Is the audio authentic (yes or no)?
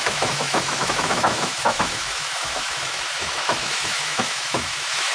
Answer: no